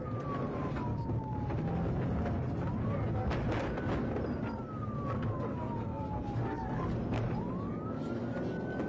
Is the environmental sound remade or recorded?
recorded